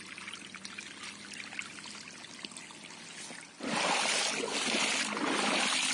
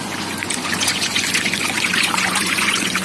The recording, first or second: first